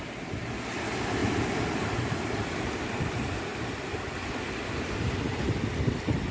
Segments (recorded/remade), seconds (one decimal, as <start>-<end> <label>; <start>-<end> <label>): 0.0-1.2 recorded; 1.2-3.0 remade; 3.0-6.3 recorded